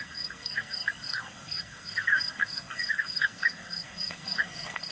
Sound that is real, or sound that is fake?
fake